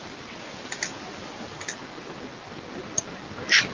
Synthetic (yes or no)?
no